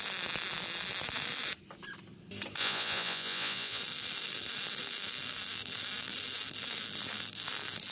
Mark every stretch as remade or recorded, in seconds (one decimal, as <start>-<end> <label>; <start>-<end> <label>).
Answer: 0.0-2.6 recorded; 2.6-3.8 remade; 3.8-7.9 recorded